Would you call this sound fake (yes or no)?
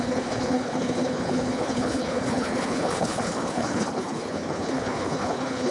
yes